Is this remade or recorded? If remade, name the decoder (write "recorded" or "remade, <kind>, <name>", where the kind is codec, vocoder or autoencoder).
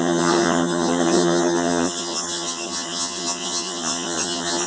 remade, vocoder, HiFi-GAN